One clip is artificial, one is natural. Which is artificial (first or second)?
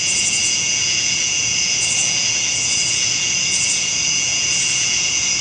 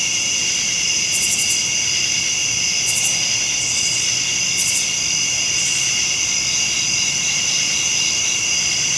first